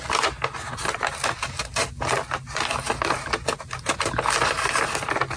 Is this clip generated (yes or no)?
no